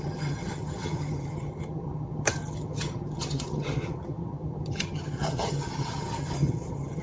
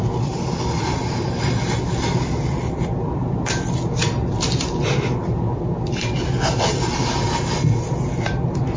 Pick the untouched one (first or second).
second